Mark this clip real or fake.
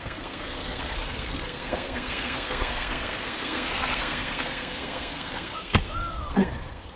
fake